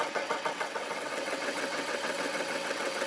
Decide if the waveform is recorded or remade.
remade